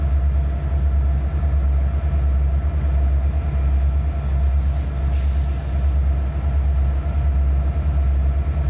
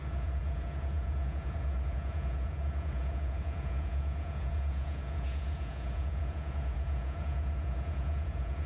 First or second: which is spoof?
second